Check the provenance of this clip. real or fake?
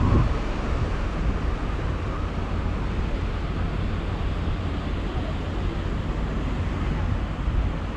real